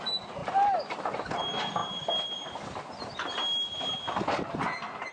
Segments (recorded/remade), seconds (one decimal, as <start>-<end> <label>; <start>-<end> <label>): 0.0-5.1 recorded